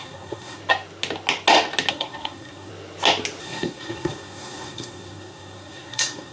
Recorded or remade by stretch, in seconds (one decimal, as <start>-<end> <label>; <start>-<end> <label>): 0.0-0.6 remade; 0.6-1.9 recorded; 1.9-2.7 remade; 2.7-3.4 recorded; 3.4-6.3 remade